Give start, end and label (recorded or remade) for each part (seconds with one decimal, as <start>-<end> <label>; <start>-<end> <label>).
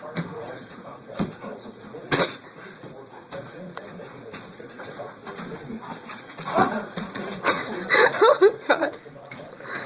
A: 0.0-5.2 remade; 5.2-6.2 recorded; 6.2-7.6 remade; 7.6-8.2 recorded; 8.2-9.9 remade